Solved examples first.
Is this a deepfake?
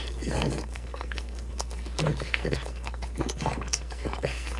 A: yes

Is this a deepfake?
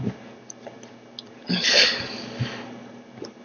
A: no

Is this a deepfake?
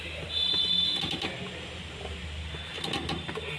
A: no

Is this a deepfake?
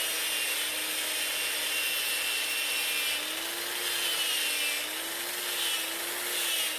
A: no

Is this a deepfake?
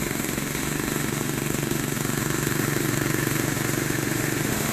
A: yes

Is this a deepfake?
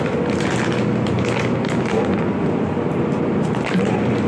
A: no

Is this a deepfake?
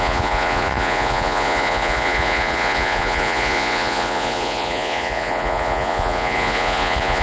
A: yes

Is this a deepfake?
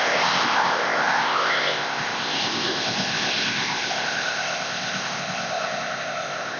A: yes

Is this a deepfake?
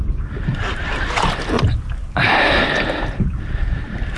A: no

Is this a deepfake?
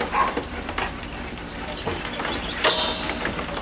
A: yes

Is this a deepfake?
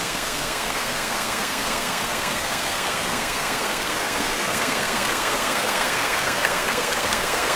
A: yes